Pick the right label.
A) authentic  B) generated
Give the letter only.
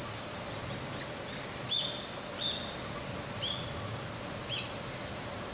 A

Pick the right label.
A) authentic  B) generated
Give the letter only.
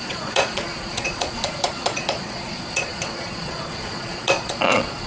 B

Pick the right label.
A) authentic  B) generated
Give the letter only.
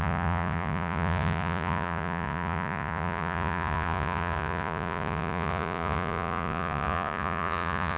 B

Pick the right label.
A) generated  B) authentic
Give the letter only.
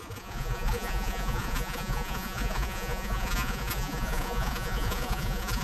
A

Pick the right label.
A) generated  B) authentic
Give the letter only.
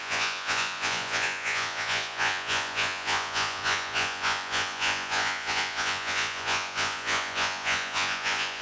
A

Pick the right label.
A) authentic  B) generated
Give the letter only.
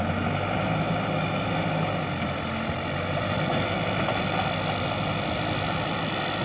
A